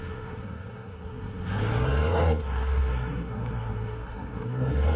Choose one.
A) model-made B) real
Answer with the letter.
A